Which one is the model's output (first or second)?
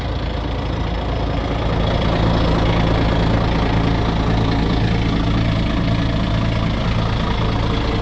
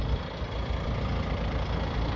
second